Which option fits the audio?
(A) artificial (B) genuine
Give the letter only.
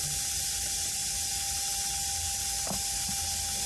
B